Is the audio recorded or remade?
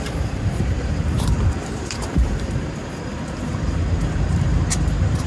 remade